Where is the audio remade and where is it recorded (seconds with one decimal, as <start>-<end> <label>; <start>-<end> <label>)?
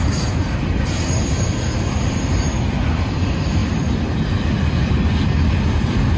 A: 0.0-6.2 recorded